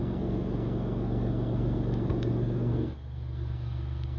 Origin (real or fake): fake